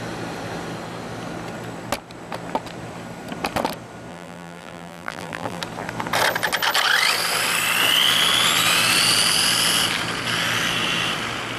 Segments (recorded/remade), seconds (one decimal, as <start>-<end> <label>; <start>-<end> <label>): 0.0-4.1 recorded; 4.1-5.6 remade; 5.6-11.6 recorded